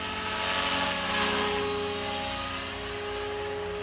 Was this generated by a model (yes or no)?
no